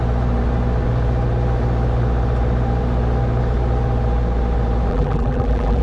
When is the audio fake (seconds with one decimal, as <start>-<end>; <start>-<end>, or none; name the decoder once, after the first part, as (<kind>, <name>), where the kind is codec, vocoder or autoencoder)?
4.9-5.8 (vocoder, BigVGAN v2)